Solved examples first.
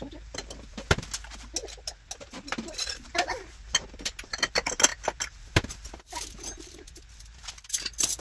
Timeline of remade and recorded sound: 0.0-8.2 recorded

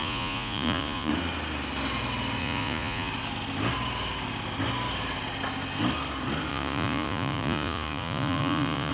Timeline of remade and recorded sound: 0.0-1.1 remade; 1.1-2.4 recorded; 2.4-3.1 remade; 3.1-6.5 recorded; 6.5-8.9 remade

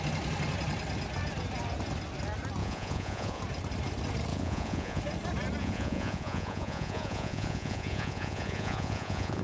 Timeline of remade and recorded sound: 0.0-2.6 recorded; 2.6-3.4 remade; 3.4-4.3 recorded; 4.3-5.0 remade; 5.0-5.6 recorded; 5.6-9.4 remade

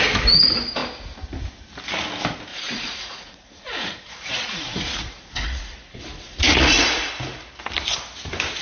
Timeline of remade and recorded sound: 0.0-2.5 recorded; 2.5-7.1 remade; 7.1-8.6 recorded

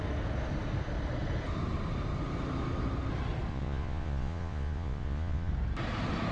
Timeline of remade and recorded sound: 0.0-3.5 recorded; 3.5-5.5 remade; 5.5-6.3 recorded

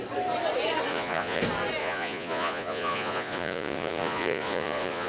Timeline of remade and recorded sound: 0.0-0.9 recorded; 0.9-1.4 remade; 1.4-1.8 recorded; 1.8-5.1 remade

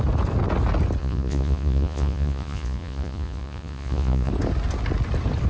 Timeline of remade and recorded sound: 0.0-1.0 recorded; 1.0-4.3 remade; 4.3-5.5 recorded

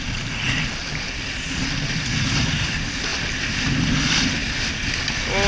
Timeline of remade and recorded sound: 0.0-5.5 recorded